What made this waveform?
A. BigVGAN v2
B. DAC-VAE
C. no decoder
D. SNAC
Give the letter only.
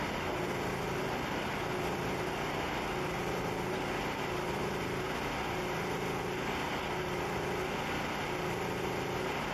C